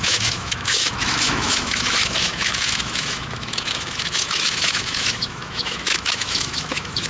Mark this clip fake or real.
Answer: fake